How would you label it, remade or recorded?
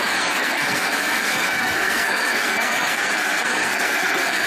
remade